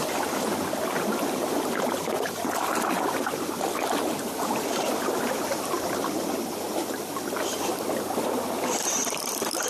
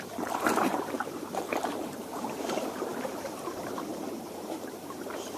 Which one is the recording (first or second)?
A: first